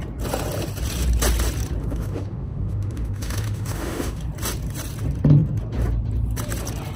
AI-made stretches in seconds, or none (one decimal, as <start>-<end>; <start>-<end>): 1.8-4.2